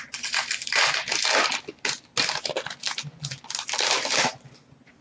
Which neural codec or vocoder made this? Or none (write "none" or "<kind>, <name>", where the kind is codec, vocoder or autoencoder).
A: none